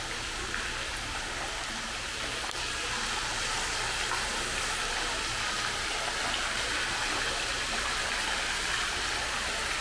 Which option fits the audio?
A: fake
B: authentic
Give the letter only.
B